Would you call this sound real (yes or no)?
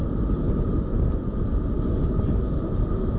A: yes